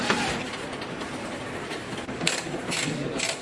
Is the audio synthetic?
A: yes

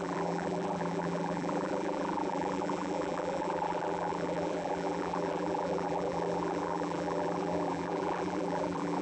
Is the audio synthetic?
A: yes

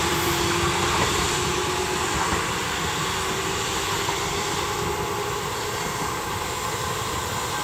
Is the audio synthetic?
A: no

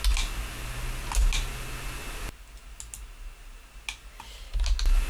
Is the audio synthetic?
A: no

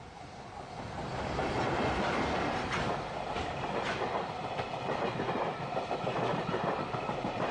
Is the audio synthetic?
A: no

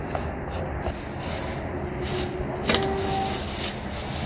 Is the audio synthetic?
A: no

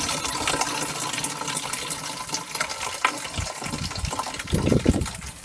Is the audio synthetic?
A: no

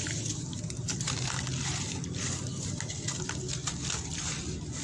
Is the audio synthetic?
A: yes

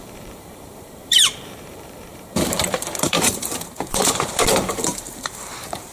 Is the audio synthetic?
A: yes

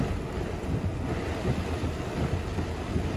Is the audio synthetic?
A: yes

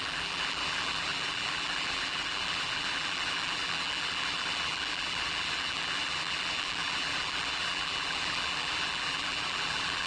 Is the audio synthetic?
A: yes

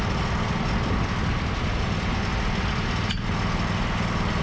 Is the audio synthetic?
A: no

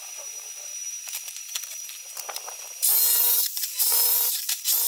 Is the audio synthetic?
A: yes